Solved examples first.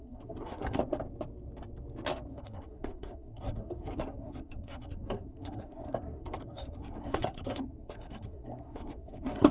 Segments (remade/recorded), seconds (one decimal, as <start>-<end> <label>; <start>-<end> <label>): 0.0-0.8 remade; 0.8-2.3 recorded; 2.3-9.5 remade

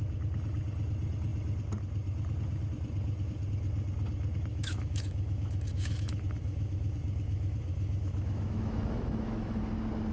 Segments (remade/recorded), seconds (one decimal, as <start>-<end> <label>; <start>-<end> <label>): 0.0-4.5 recorded; 4.5-9.6 remade; 9.6-10.1 recorded

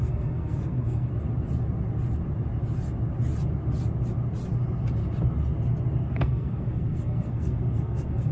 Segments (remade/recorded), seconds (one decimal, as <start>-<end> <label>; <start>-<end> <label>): 0.0-1.1 remade; 1.1-6.1 recorded; 6.1-8.3 remade